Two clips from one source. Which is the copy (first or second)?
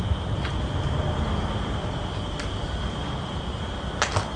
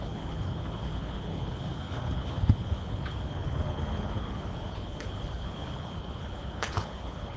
second